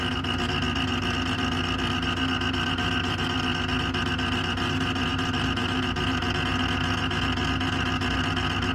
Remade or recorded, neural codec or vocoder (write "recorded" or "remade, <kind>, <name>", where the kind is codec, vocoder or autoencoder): recorded